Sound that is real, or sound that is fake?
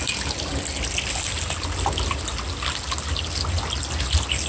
real